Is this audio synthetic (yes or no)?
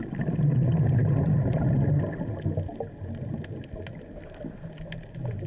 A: no